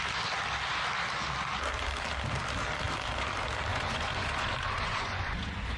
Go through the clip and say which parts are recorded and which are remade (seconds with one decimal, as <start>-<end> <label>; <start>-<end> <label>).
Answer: 0.0-3.7 recorded; 3.7-5.8 remade